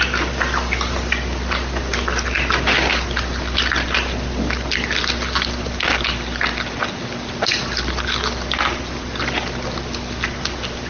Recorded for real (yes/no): yes